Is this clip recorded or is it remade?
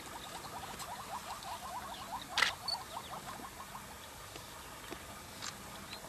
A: recorded